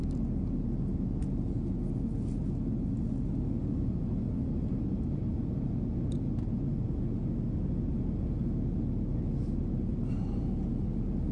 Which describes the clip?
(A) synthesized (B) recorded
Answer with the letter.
B